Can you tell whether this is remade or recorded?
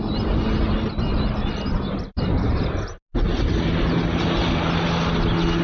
recorded